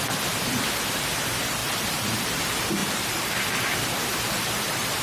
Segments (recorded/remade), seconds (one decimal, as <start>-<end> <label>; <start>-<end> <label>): 0.0-1.6 recorded; 1.6-2.4 remade; 2.4-5.0 recorded